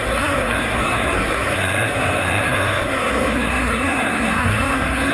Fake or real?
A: fake